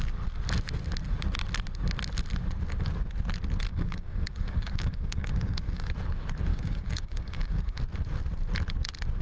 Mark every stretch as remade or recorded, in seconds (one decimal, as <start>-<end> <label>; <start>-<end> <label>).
0.0-3.7 recorded; 3.7-5.9 remade; 5.9-6.5 recorded; 6.5-7.8 remade; 7.8-9.2 recorded